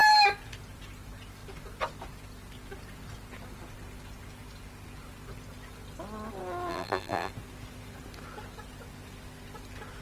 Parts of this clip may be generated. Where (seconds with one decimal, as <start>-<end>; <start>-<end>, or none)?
6.7-7.3